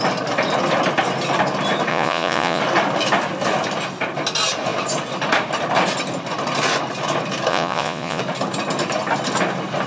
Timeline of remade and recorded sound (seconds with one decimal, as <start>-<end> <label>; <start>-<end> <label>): 0.0-1.9 recorded; 1.9-2.6 remade; 2.6-7.5 recorded; 7.5-8.2 remade; 8.2-9.9 recorded